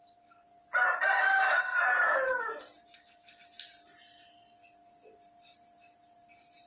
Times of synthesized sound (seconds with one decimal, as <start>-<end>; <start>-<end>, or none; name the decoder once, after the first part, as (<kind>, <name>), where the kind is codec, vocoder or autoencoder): 1.7-2.4 (vocoder, Vocos)